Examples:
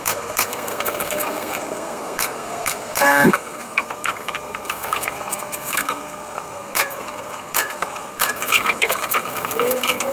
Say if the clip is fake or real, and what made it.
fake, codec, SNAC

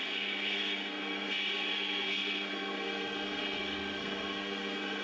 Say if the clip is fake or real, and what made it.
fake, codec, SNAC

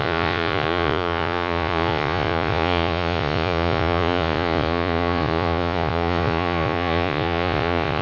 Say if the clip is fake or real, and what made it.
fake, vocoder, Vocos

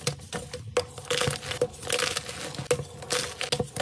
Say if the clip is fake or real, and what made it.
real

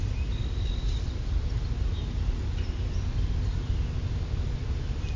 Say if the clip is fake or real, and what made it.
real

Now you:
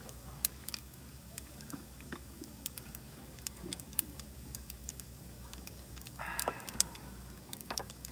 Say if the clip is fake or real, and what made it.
fake, codec, DAC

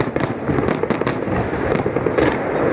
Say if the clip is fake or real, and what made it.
real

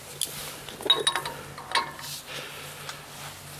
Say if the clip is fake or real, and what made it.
real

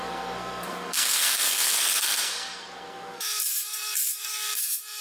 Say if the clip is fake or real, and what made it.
fake, codec, SNAC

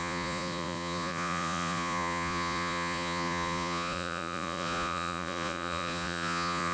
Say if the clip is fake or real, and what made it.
fake, vocoder, Vocos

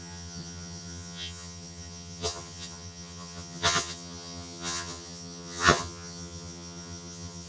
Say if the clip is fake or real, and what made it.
fake, vocoder, HiFi-GAN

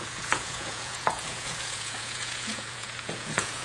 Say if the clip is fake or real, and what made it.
fake, vocoder, Vocos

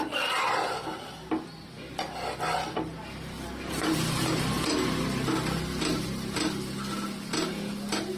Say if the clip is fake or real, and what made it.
real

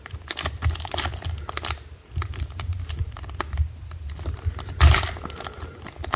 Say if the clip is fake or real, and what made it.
real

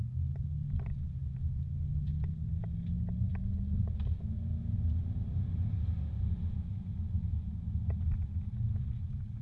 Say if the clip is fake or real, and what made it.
real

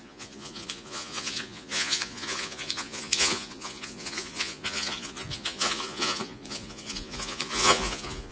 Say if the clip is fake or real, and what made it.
fake, vocoder, Vocos